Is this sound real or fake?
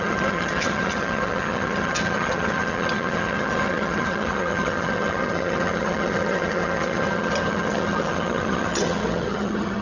fake